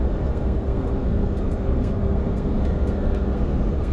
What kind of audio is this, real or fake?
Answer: fake